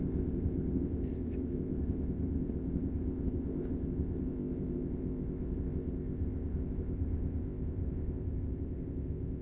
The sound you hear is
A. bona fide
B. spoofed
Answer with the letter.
B